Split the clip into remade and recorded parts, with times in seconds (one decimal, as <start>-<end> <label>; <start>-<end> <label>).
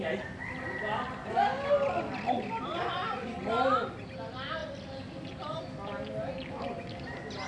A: 0.0-7.5 recorded